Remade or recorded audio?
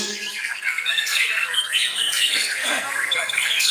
remade